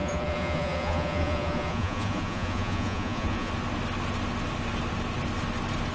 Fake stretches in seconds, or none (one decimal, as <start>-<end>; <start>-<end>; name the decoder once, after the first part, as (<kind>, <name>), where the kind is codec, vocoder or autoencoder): 0.0-3.5 (vocoder, Vocos)